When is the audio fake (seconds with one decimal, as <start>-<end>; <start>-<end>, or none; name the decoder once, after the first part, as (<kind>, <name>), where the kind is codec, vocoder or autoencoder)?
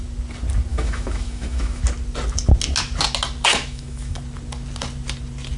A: 0.7-1.8 (autoencoder, DAC-VAE); 3.5-4.2